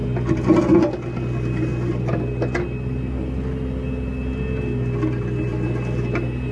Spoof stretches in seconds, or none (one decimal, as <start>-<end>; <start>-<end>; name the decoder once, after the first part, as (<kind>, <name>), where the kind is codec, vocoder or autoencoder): none